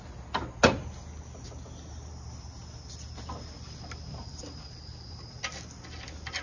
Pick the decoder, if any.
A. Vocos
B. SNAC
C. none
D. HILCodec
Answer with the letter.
C